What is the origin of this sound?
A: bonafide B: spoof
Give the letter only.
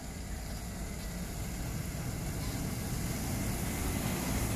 A